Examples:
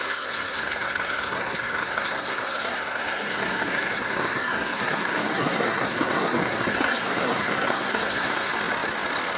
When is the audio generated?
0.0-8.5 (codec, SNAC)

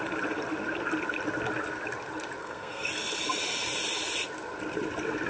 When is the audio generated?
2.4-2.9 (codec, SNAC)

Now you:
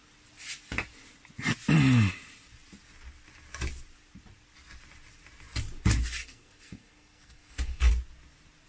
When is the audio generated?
6.2-7.9 (codec, SNAC)

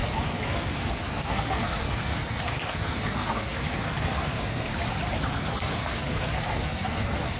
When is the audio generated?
0.0-4.7 (codec, SNAC); 5.3-7.4

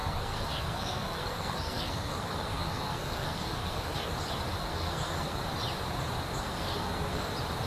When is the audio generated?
0.0-4.1 (codec, SNAC); 4.6-5.4; 6.4-7.3

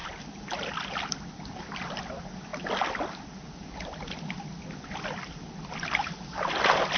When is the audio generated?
none

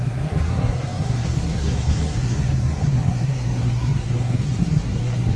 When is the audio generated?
0.0-5.4 (codec, SNAC)